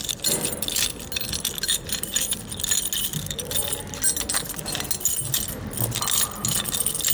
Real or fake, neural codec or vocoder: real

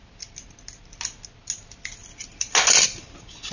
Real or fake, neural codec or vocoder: real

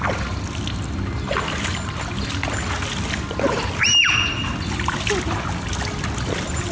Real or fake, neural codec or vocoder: real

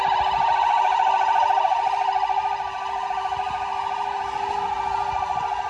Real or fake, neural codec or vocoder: real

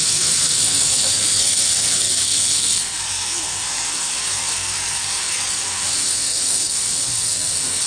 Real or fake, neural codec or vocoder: fake, codec, SNAC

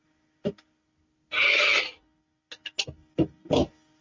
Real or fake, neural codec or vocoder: real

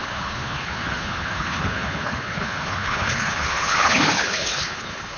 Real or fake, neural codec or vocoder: fake, codec, HILCodec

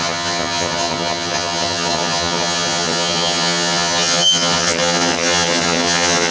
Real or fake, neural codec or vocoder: fake, vocoder, HiFi-GAN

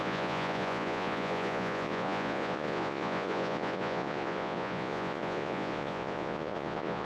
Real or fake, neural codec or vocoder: fake, vocoder, Vocos